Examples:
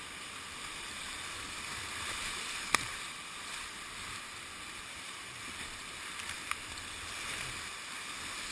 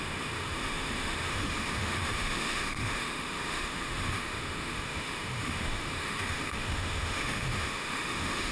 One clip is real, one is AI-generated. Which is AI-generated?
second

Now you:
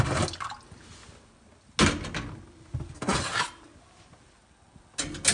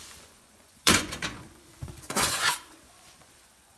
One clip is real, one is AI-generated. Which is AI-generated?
second